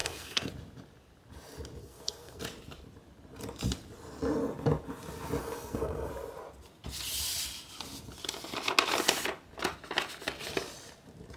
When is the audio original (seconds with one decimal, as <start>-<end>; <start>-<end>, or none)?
0.5-1.8; 2.4-5.4; 6.1-11.4